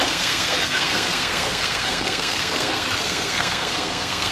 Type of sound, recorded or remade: remade